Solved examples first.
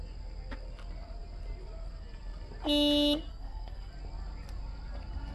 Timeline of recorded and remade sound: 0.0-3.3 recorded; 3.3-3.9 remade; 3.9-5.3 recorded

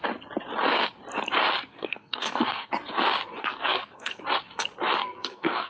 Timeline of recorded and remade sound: 0.0-1.7 recorded; 1.7-2.7 remade; 2.7-3.4 recorded; 3.4-4.2 remade; 4.2-5.0 recorded; 5.0-5.7 remade